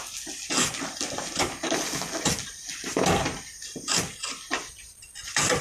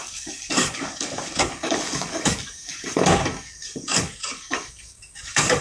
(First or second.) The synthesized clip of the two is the second